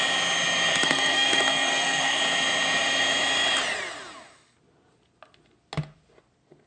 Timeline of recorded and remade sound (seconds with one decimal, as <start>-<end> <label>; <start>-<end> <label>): 0.0-0.7 recorded; 0.7-2.2 remade; 2.2-6.7 recorded